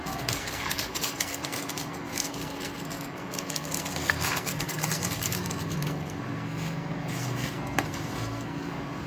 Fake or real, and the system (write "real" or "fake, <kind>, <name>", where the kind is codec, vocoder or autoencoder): fake, codec, SNAC